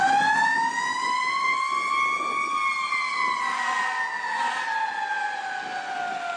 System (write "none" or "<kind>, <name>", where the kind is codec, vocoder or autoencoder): none